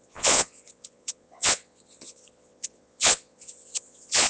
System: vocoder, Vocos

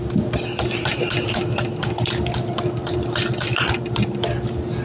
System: none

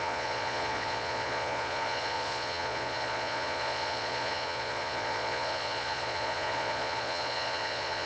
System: vocoder, Vocos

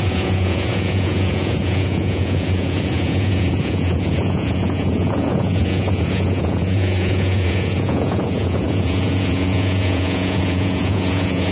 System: vocoder, Vocos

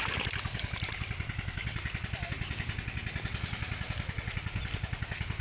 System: none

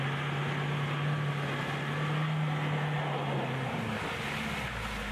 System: none